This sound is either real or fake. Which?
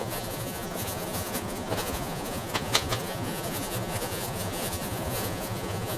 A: fake